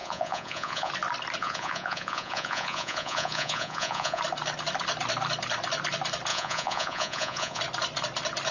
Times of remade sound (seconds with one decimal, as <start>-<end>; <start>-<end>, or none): 0.0-0.9; 1.4-4.2; 6.3-7.6